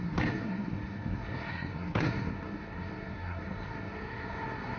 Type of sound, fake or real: fake